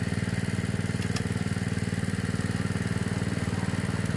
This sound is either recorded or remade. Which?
recorded